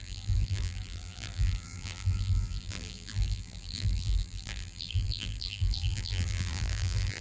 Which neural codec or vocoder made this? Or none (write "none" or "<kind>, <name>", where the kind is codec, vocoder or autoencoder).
vocoder, BigVGAN v2